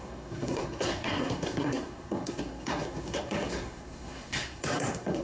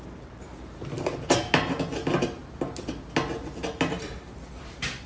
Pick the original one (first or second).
second